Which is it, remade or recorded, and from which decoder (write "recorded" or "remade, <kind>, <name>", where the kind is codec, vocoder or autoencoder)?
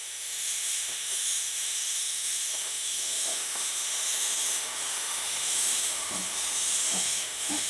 remade, autoencoder, DAC-VAE